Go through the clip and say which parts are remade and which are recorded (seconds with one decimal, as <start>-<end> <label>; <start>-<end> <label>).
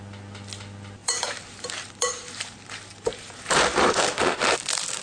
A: 0.0-1.0 recorded; 1.0-4.0 remade; 4.0-5.0 recorded